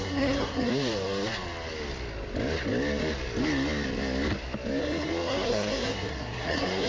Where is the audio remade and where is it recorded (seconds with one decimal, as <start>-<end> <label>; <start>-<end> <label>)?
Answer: 0.0-0.7 remade; 0.7-4.8 recorded; 4.8-6.9 remade